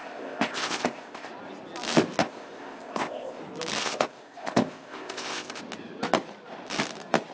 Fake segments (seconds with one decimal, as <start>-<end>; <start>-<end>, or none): 0.0-1.3; 2.2-3.4; 3.8-5.6